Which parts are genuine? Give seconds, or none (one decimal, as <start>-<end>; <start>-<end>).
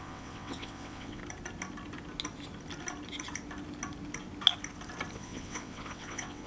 1.2-5.1